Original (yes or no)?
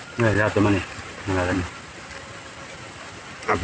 yes